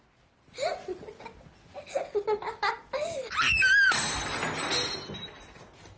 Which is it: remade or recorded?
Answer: recorded